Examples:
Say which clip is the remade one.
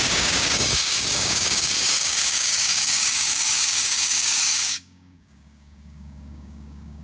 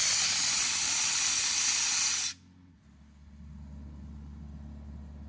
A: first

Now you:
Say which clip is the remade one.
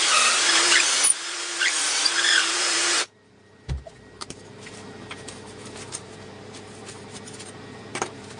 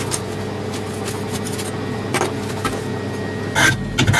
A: first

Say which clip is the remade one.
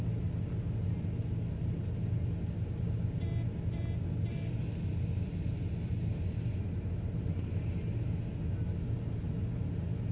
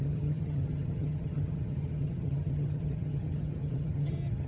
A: second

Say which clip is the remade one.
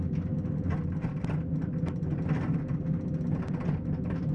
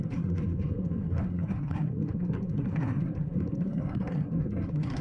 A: second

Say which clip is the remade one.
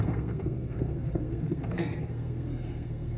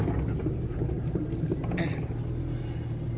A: first